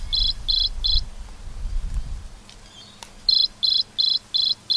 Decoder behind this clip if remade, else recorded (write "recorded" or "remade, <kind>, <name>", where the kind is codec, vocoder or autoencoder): recorded